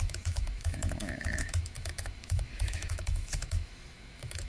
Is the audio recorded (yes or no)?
no